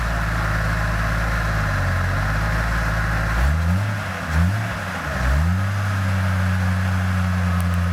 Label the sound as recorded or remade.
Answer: recorded